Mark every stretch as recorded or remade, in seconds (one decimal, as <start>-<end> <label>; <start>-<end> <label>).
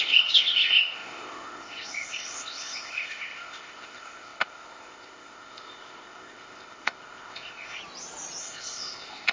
0.0-7.8 remade; 7.8-8.4 recorded; 8.4-9.3 remade